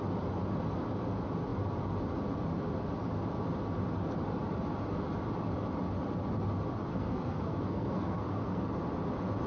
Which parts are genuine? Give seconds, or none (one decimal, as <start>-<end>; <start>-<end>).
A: 0.0-6.9; 8.6-9.5